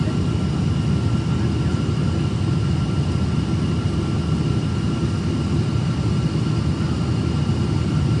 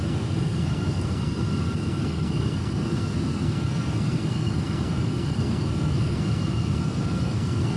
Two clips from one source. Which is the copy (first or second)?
second